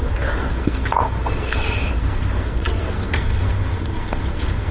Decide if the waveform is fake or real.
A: fake